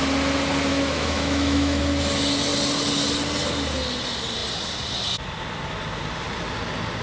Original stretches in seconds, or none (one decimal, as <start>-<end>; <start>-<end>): 0.0-0.7; 1.8-7.0